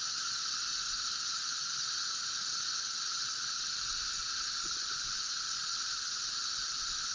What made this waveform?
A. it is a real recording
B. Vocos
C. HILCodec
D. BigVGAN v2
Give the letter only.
A